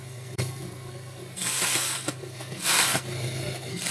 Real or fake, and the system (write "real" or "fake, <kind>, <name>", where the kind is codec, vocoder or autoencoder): fake, codec, SNAC